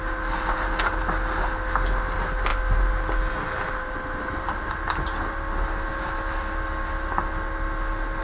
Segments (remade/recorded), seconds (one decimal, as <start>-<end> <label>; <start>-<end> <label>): 0.0-8.2 recorded